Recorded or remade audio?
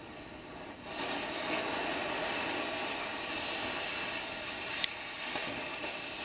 recorded